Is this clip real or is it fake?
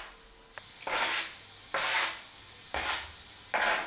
real